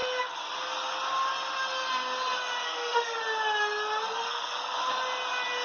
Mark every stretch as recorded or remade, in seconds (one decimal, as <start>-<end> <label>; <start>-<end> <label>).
0.0-2.6 recorded; 2.6-3.2 remade; 3.2-4.0 recorded; 4.0-4.8 remade; 4.8-5.6 recorded